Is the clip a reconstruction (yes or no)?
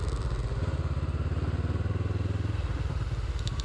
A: no